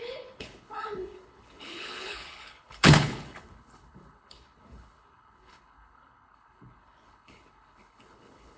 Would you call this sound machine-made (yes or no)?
yes